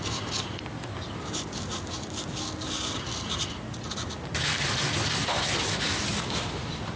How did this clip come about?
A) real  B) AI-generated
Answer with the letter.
A